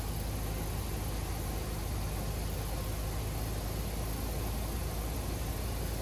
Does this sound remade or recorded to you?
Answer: recorded